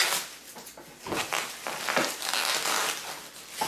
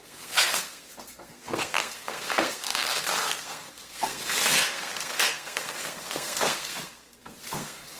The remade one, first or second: second